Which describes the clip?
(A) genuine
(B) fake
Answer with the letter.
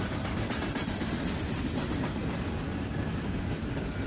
A